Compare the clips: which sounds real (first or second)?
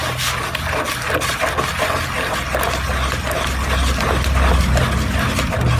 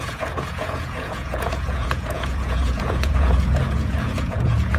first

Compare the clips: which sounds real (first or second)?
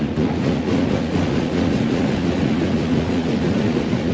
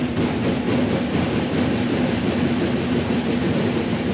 second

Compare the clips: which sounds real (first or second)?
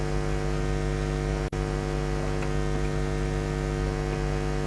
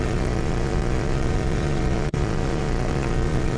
first